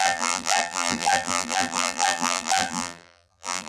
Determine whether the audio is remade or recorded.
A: remade